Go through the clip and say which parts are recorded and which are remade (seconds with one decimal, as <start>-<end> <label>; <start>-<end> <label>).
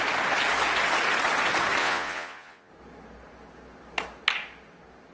0.0-1.8 recorded; 1.8-2.7 remade; 2.7-5.1 recorded